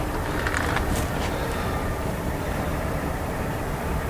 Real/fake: fake